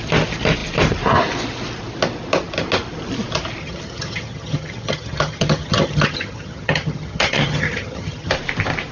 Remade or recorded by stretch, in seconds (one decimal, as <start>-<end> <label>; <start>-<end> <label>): 0.0-3.6 recorded; 3.6-8.3 remade; 8.3-8.9 recorded